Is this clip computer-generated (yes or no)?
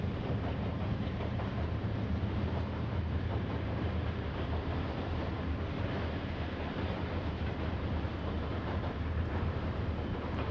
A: yes